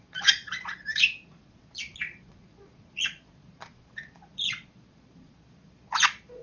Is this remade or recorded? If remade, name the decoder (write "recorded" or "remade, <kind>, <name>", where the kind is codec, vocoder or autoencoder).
remade, vocoder, Vocos